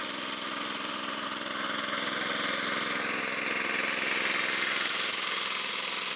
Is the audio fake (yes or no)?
no